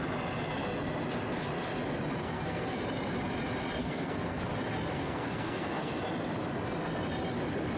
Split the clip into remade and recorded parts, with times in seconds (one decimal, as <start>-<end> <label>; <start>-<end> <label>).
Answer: 0.0-2.2 recorded; 2.2-2.8 remade; 2.8-3.8 recorded; 3.8-4.4 remade; 4.4-4.9 recorded; 4.9-6.0 remade; 6.0-7.8 recorded